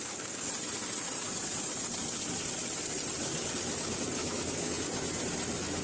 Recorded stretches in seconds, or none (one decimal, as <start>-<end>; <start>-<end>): 0.0-4.2; 4.7-5.8